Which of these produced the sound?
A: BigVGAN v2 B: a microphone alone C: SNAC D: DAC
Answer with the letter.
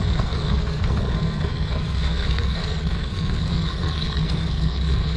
C